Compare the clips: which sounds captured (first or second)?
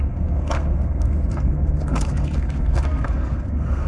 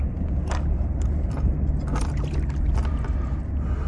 second